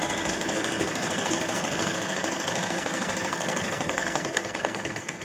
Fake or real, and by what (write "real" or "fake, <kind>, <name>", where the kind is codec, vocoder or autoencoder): fake, codec, SNAC